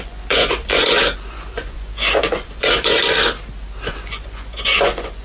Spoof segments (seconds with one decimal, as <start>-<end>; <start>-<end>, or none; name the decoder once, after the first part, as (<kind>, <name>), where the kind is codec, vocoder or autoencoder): 0.0-3.0 (vocoder, Vocos); 3.8-5.2